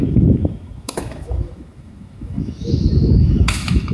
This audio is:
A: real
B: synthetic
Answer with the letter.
B